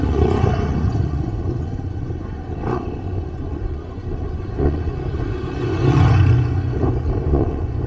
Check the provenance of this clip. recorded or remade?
remade